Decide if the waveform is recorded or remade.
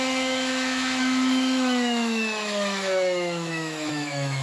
remade